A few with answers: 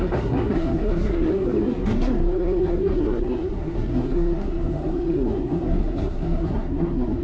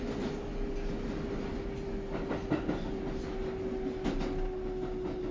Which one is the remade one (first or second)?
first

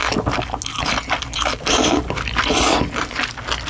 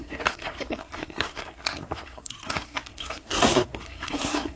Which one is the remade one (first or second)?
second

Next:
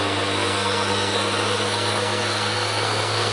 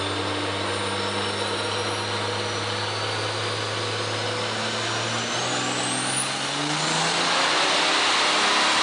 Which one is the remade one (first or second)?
first